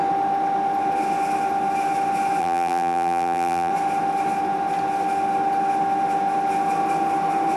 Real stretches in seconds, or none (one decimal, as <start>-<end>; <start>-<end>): 0.0-2.4; 3.7-7.6